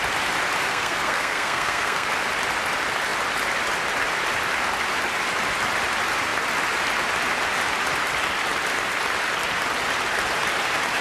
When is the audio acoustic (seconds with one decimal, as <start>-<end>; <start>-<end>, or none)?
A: 0.0-0.7; 2.1-11.0